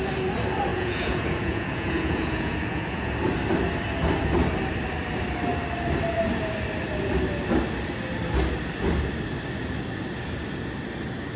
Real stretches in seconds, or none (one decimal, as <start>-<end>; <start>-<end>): 0.0-0.7; 3.1-11.4